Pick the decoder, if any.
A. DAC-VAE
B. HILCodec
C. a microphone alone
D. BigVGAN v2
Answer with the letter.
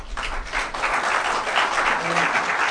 C